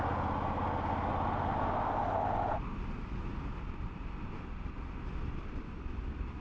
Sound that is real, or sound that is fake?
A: real